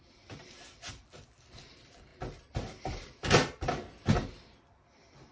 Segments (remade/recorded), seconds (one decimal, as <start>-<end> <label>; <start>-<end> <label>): 0.0-5.3 remade